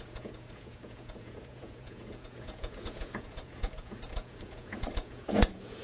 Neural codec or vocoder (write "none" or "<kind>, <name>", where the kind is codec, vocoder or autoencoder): vocoder, Vocos